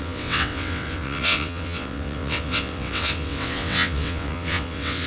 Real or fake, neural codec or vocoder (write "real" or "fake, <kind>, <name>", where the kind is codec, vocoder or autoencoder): fake, vocoder, WaveNeXt